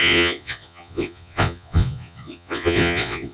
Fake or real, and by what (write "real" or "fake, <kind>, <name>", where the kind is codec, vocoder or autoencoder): fake, vocoder, Vocos